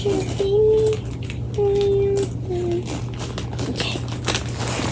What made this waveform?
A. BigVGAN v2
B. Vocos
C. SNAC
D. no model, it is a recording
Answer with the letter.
D